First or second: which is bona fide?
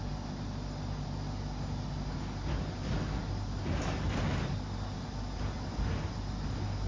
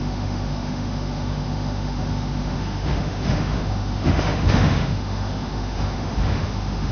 first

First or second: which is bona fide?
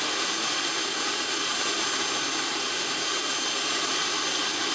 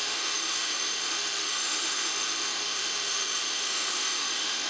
first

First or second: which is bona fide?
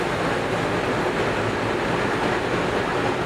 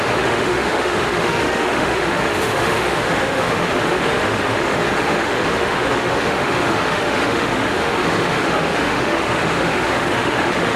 first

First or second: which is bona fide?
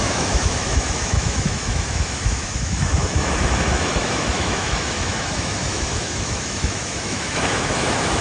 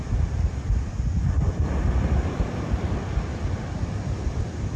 second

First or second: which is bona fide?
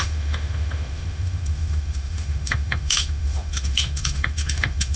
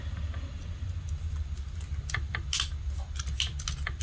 second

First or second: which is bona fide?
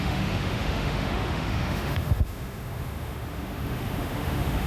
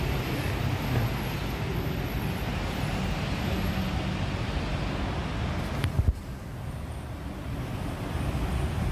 second